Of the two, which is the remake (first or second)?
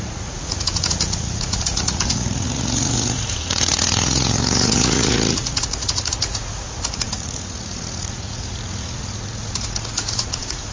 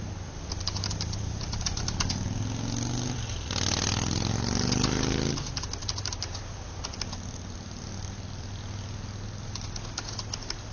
first